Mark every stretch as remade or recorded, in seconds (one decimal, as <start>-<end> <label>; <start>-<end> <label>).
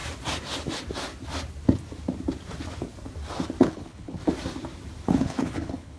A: 0.0-3.6 recorded; 3.6-4.2 remade; 4.2-5.1 recorded; 5.1-6.0 remade